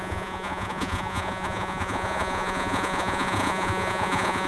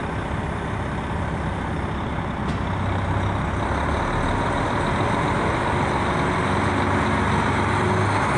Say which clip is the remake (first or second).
first